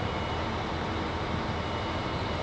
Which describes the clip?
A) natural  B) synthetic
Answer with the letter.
A